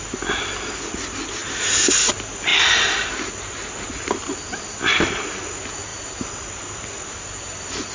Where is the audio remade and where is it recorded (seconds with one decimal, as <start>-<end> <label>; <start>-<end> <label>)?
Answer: 0.0-7.9 recorded